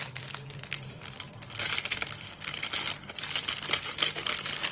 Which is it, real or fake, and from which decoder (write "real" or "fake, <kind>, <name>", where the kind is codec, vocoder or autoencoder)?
fake, vocoder, BigVGAN v2